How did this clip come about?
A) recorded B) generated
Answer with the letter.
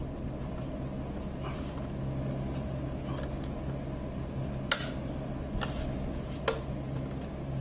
A